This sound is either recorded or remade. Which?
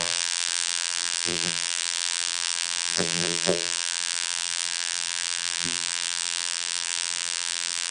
remade